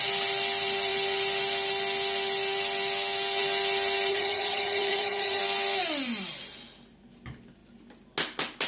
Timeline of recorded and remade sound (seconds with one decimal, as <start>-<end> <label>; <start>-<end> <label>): 0.0-4.1 recorded; 4.1-5.4 remade; 5.4-8.7 recorded

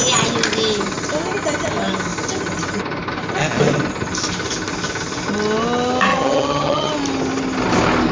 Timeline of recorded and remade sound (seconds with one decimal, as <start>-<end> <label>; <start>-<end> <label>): 0.0-6.1 recorded; 6.1-6.9 remade; 6.9-8.1 recorded